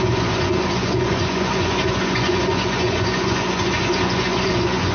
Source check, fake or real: fake